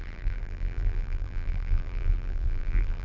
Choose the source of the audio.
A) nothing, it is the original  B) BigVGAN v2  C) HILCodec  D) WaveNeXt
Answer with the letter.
B